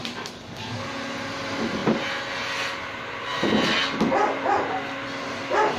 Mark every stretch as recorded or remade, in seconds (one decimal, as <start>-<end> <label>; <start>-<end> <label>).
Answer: 0.0-0.5 remade; 0.5-5.8 recorded

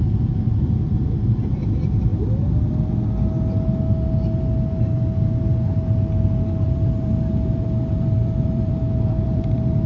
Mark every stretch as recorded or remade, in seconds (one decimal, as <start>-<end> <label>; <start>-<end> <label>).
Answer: 0.0-2.1 remade; 2.1-6.5 recorded; 6.5-9.9 remade

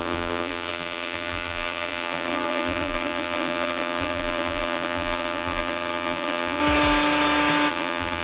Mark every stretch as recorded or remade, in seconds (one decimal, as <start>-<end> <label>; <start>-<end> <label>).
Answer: 0.0-6.6 remade; 6.6-7.7 recorded; 7.7-8.2 remade

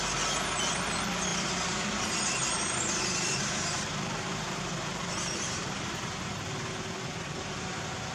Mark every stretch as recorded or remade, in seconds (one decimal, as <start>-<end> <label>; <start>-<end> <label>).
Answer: 0.0-1.3 recorded; 1.3-6.2 remade; 6.2-8.1 recorded

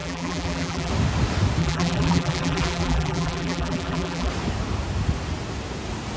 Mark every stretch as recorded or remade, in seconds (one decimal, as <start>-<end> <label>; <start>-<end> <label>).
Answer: 0.0-0.9 remade; 0.9-1.6 recorded; 1.6-4.3 remade; 4.3-6.2 recorded

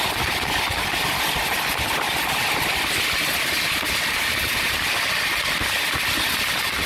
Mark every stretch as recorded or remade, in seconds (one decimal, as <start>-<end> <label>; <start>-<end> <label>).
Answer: 0.0-6.9 recorded